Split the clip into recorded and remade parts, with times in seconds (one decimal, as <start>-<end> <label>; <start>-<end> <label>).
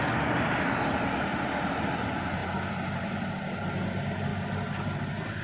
0.0-5.4 recorded